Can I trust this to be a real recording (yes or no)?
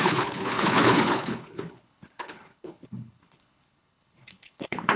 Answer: no